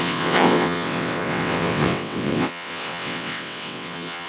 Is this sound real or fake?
fake